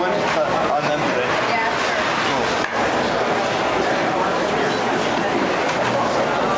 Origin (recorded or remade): recorded